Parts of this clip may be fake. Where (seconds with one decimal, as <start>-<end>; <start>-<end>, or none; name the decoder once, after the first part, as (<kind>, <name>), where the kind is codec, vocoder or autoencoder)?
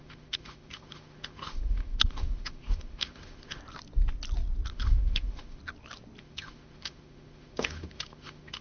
0.0-3.6 (autoencoder, DAC-VAE); 4.7-5.6; 6.2-8.6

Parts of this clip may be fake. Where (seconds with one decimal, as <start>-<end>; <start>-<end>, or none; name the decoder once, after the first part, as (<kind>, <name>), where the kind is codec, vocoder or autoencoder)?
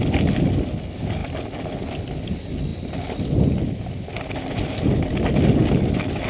none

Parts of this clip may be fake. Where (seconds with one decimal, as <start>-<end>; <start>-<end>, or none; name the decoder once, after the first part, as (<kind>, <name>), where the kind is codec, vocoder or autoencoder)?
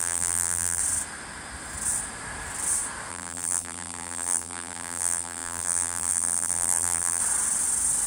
0.0-0.8 (vocoder, BigVGAN v2); 3.1-7.2